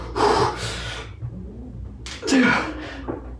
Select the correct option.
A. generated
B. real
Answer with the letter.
B